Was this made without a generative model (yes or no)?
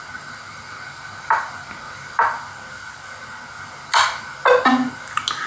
yes